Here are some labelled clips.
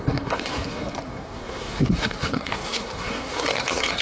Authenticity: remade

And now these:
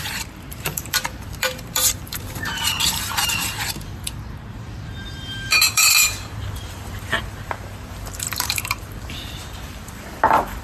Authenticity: remade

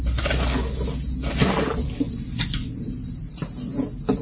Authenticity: recorded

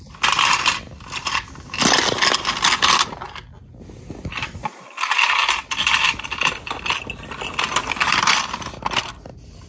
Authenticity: recorded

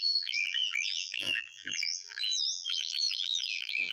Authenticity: remade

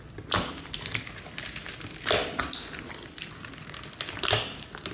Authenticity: recorded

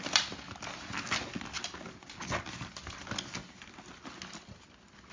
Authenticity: recorded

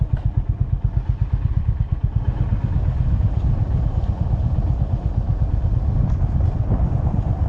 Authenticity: recorded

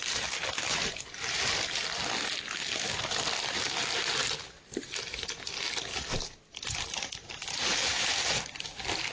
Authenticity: recorded